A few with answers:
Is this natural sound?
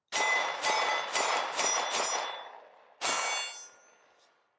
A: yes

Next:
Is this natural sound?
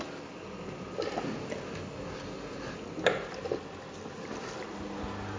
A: yes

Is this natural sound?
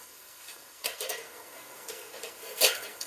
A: no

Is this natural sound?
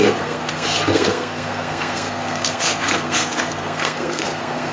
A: no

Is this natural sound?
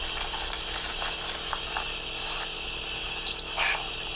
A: yes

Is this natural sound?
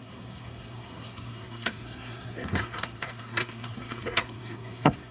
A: no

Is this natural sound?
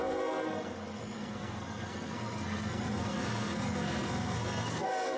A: no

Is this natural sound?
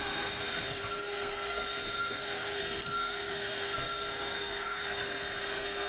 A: no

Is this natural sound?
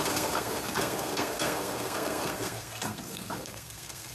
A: no